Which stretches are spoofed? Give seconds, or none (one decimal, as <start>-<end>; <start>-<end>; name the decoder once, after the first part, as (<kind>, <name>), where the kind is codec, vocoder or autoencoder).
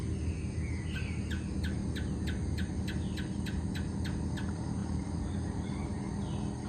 4.8-6.0 (vocoder, BigVGAN v2)